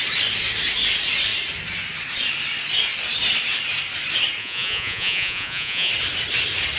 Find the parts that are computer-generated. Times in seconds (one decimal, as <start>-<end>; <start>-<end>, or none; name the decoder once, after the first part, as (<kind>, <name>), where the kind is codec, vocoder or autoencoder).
4.4-5.9 (vocoder, Vocos)